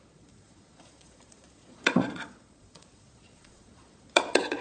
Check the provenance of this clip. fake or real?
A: fake